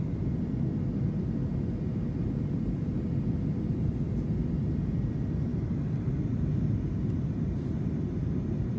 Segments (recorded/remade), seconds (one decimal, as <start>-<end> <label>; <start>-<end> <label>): 0.0-8.8 recorded